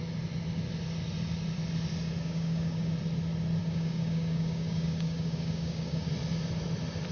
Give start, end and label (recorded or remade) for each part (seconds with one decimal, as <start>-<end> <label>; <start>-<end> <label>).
0.0-2.2 recorded; 2.2-2.9 remade; 2.9-3.6 recorded; 3.6-6.1 remade; 6.1-7.1 recorded